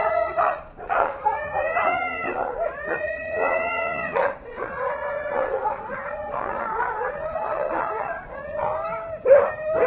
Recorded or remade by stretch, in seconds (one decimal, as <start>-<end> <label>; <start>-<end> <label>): 0.0-8.7 remade; 8.7-9.9 recorded